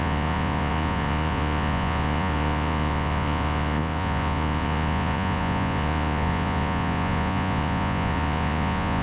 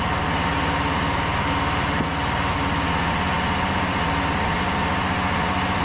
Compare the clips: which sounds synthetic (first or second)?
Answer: first